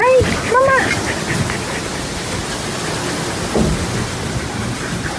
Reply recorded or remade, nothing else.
recorded